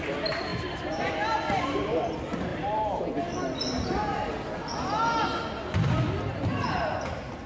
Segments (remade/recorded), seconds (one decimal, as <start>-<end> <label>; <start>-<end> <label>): 0.0-0.5 recorded; 0.5-2.0 remade; 2.0-2.5 recorded; 2.5-3.3 remade; 3.3-7.5 recorded